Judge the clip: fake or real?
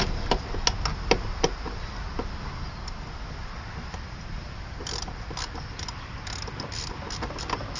real